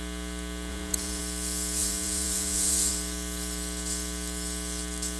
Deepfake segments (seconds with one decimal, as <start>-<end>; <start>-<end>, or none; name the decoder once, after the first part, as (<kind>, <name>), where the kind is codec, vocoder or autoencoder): 0.7-1.2 (vocoder, Vocos); 1.8-2.9